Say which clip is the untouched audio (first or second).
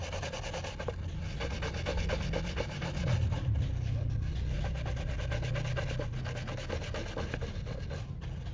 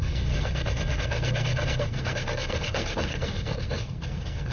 first